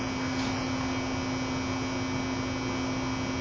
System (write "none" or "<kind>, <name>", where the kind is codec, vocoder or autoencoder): none